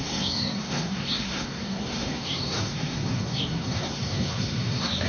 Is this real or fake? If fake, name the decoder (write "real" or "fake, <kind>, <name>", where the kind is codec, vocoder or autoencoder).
fake, codec, SNAC